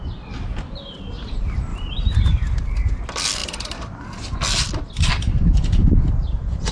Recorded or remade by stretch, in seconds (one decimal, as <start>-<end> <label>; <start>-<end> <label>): 0.0-1.7 recorded; 1.7-2.3 remade; 2.3-5.8 recorded; 5.8-6.7 remade

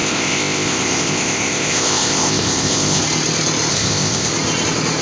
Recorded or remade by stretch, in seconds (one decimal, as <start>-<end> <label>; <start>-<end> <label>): 0.0-3.0 remade; 3.0-3.7 recorded; 3.7-4.3 remade; 4.3-5.0 recorded